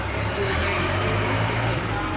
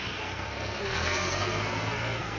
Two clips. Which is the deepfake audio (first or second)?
second